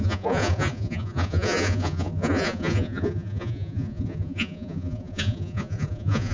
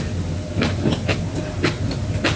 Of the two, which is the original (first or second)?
second